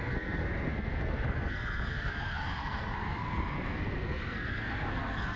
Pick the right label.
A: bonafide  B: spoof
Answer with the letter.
B